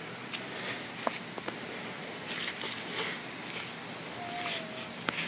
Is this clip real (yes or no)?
yes